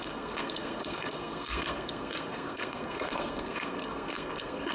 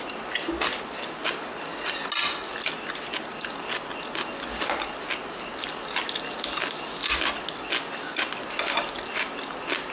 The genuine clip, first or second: second